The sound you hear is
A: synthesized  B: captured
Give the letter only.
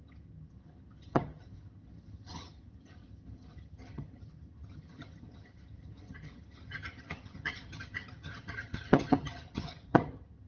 A